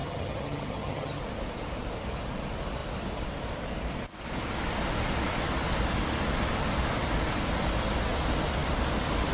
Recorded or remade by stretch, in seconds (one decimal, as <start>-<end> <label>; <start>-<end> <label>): 0.0-1.2 remade; 1.2-9.3 recorded